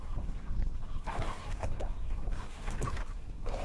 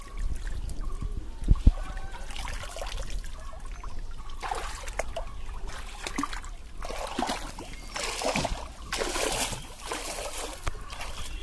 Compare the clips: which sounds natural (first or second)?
second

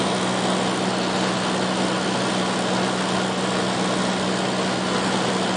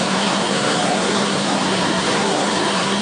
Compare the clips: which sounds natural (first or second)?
first